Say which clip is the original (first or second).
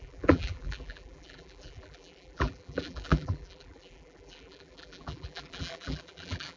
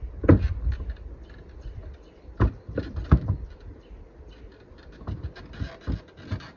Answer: second